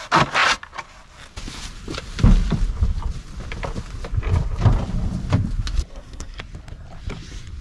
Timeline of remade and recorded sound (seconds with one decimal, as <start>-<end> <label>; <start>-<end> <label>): 0.0-5.9 recorded; 5.9-6.4 remade; 6.4-7.6 recorded